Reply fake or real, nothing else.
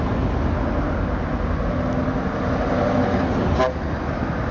real